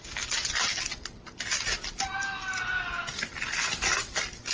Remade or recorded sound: recorded